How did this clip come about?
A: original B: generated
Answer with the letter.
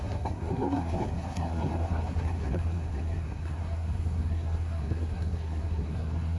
B